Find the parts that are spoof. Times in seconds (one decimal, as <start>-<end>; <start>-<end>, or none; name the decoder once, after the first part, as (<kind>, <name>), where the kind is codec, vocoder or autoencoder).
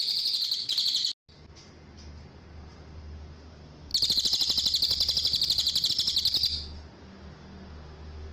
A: none